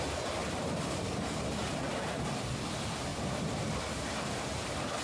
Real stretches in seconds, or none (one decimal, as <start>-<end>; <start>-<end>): none